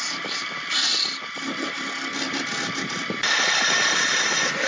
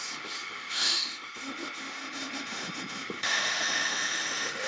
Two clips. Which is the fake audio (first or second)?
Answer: second